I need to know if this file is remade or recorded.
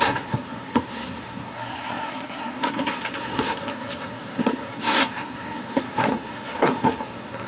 remade